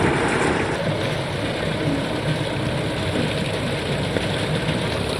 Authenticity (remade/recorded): recorded